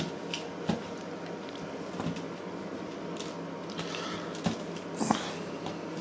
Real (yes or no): yes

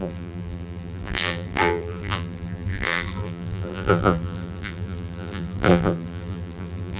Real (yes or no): no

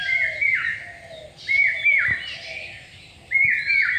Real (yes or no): yes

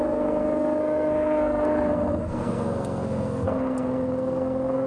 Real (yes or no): no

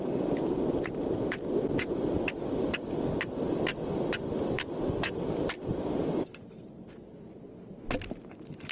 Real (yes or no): yes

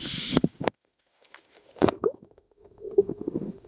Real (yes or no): no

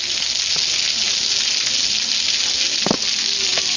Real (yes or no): yes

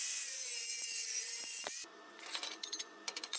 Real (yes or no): no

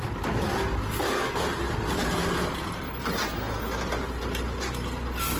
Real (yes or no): yes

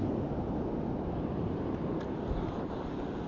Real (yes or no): yes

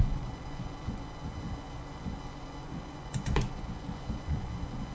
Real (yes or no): no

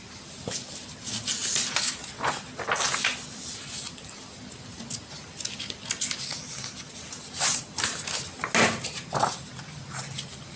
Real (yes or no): yes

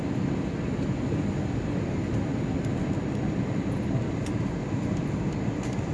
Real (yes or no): yes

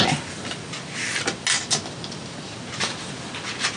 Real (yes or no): yes